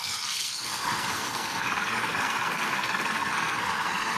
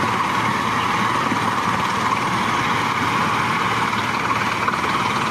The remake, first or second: first